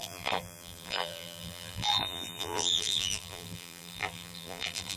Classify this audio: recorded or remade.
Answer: remade